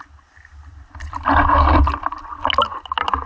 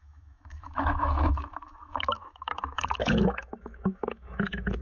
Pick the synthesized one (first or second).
second